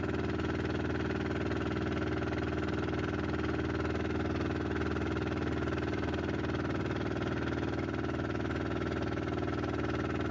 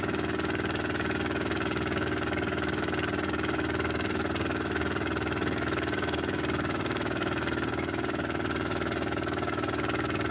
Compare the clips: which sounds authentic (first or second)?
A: first